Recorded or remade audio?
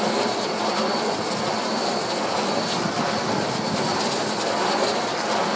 recorded